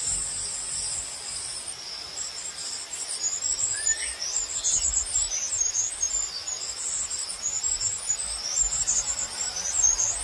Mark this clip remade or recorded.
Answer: remade